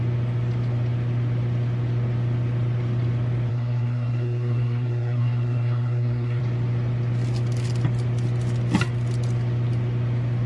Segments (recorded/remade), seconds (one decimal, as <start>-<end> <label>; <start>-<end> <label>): 0.0-3.5 recorded; 3.5-6.4 remade; 6.4-10.5 recorded